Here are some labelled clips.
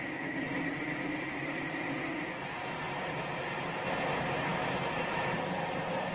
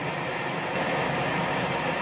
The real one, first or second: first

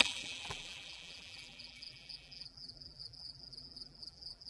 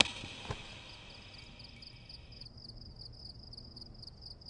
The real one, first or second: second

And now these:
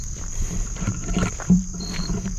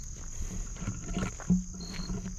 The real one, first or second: second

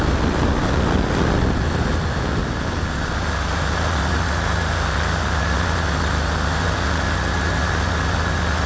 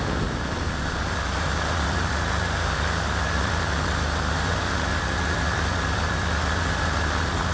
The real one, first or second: first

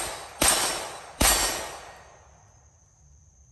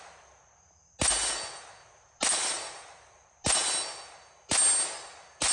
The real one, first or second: second